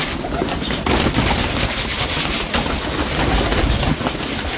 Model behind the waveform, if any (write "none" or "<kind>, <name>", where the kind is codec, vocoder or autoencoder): none